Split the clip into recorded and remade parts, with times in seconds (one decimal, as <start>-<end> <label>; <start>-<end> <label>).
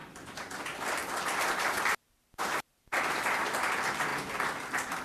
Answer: 0.0-4.1 remade; 4.1-5.0 recorded